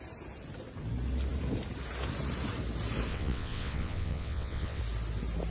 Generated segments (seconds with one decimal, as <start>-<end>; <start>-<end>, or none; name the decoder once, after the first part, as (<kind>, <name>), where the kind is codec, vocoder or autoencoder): 3.1-4.8 (vocoder, WaveNeXt)